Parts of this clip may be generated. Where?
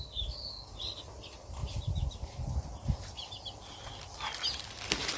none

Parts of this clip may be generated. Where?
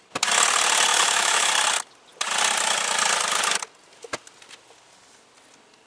0.9-1.5 (autoencoder, DAC-VAE)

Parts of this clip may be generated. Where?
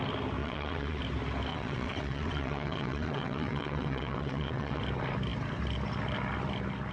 0.4-1.0 (vocoder, WaveNeXt); 1.5-4.8